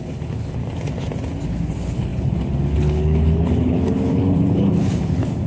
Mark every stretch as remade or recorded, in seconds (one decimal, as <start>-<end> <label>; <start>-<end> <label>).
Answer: 0.0-0.6 remade; 0.6-1.5 recorded; 1.5-5.5 remade